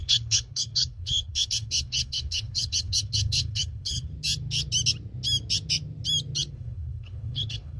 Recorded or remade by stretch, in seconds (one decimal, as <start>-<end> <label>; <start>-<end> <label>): 0.0-4.1 remade; 4.1-6.5 recorded; 6.5-7.8 remade